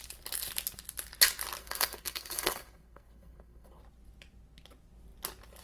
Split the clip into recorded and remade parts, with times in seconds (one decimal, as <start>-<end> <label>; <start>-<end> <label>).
0.0-1.6 recorded; 1.6-3.8 remade; 3.8-5.6 recorded